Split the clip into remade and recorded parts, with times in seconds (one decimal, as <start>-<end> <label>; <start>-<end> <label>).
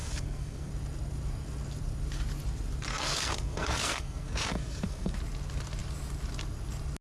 0.0-0.7 remade; 0.7-2.9 recorded; 2.9-5.2 remade; 5.2-7.0 recorded